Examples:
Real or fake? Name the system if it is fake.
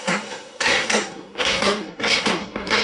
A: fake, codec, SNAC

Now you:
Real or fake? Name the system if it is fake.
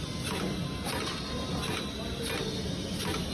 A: real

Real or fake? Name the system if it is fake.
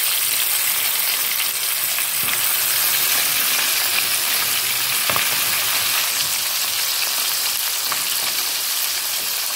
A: real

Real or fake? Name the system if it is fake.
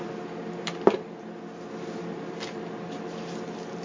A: real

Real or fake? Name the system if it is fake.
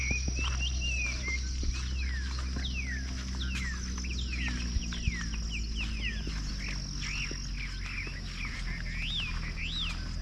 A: real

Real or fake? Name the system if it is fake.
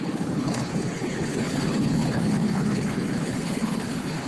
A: fake, codec, HILCodec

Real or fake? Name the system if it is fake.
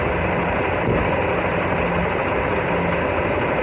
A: real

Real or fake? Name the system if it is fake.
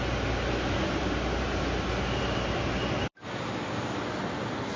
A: real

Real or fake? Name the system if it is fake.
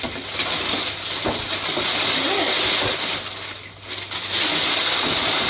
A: real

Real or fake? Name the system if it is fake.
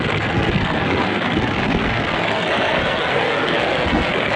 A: fake, codec, SNAC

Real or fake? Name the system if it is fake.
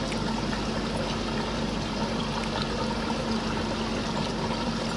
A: real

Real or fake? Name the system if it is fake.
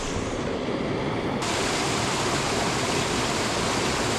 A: real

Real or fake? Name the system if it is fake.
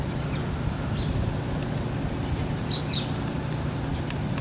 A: real